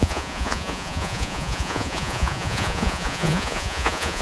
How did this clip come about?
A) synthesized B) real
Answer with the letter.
A